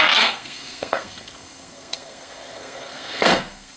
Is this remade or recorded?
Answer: remade